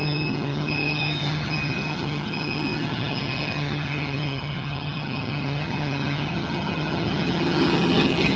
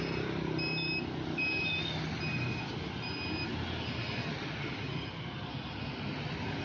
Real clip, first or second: second